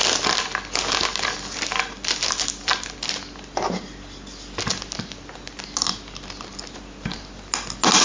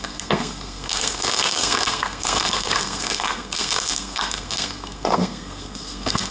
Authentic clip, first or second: first